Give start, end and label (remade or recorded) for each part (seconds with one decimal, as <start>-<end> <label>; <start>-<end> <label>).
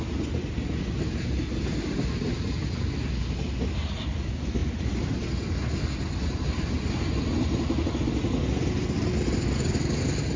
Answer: 0.0-1.7 recorded; 1.7-3.1 remade; 3.1-10.4 recorded